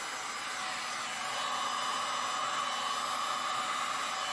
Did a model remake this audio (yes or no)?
no